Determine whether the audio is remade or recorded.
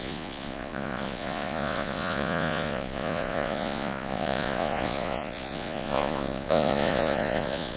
remade